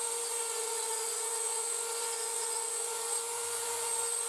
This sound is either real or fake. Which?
fake